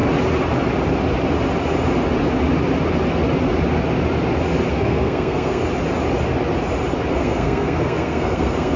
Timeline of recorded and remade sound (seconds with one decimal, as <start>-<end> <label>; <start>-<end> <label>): 0.0-4.7 recorded; 4.7-5.6 remade; 5.6-7.1 recorded; 7.1-8.8 remade